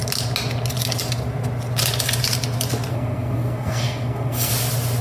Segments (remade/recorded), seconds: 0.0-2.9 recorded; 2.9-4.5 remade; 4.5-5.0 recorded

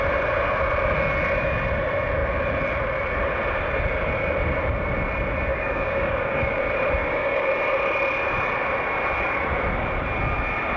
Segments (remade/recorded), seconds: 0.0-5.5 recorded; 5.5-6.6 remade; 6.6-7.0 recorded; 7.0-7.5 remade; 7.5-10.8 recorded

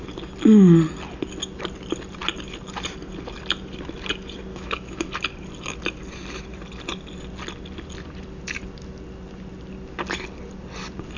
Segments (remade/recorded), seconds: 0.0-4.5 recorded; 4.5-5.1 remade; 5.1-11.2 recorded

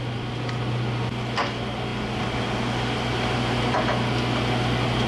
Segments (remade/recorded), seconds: 0.0-5.1 recorded